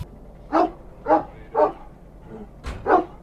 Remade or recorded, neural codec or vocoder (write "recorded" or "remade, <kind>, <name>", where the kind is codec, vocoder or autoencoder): recorded